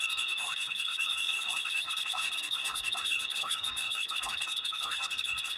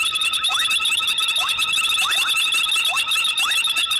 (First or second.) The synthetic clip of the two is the first